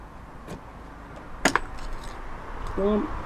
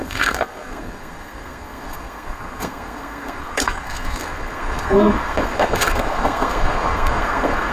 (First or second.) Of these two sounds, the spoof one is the second